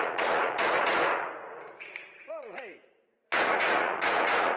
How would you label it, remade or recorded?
remade